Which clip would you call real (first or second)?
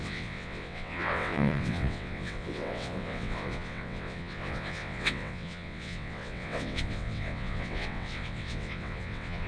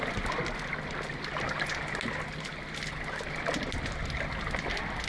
second